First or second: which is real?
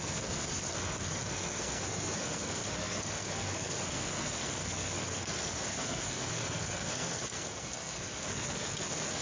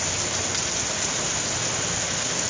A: second